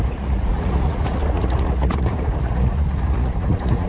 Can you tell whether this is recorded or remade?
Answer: remade